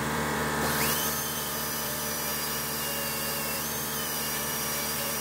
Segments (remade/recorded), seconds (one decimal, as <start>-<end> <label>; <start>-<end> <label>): 0.0-2.3 remade; 2.3-3.4 recorded; 3.4-5.2 remade